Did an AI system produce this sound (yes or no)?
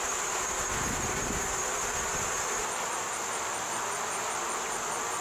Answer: no